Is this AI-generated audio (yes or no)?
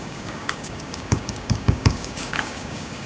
yes